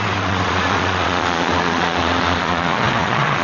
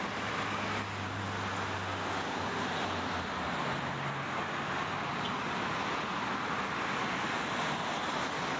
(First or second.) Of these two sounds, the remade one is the first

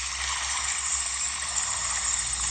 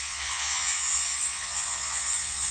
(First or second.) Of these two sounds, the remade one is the second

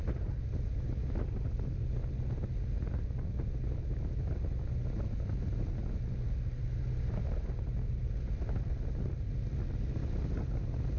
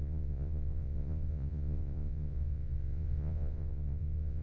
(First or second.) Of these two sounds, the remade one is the second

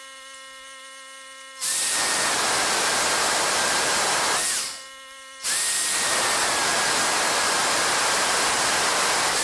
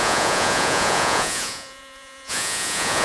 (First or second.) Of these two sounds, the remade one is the second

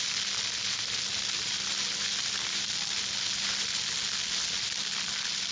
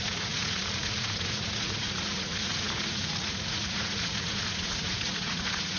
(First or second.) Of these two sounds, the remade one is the second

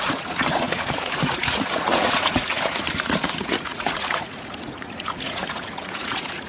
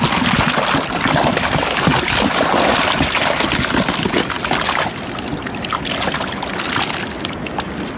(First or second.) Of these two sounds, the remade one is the first